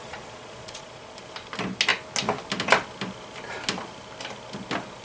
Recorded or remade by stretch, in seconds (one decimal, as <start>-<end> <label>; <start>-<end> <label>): 0.0-1.2 remade; 1.2-5.0 recorded